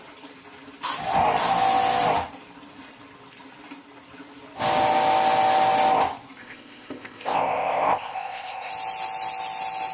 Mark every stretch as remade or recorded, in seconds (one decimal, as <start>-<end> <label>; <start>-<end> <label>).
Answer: 0.0-6.4 recorded; 6.4-8.7 remade; 8.7-9.9 recorded